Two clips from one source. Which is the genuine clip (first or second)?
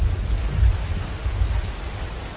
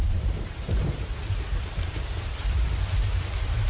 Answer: first